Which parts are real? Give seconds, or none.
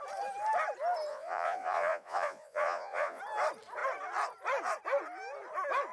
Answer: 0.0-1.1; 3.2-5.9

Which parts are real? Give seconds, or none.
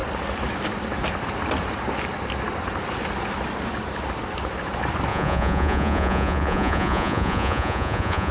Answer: 0.0-5.1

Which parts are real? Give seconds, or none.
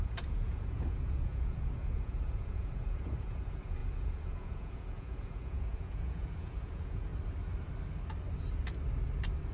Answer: 7.1-9.5